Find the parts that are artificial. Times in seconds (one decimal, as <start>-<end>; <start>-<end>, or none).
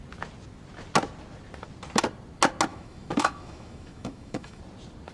2.7-4.6